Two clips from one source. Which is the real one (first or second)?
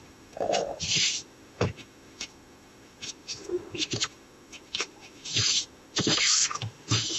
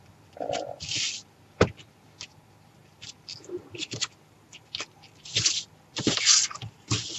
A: second